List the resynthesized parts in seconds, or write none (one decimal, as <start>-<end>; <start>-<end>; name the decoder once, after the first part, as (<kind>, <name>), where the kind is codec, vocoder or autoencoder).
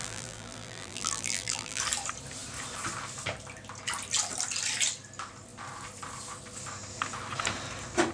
0.0-1.8 (vocoder, BigVGAN v2)